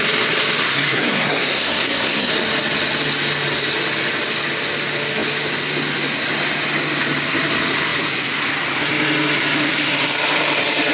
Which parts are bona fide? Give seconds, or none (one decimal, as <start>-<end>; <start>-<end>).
0.0-0.6; 2.3-10.9